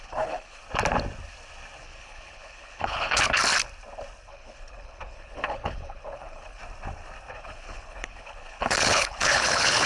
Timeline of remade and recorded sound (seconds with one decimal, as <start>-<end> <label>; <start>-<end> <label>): 0.0-0.6 remade; 0.6-1.8 recorded; 1.8-3.4 remade; 3.4-4.3 recorded; 4.3-6.6 remade; 6.6-7.3 recorded; 7.3-9.9 remade